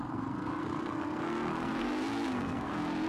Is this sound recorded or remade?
remade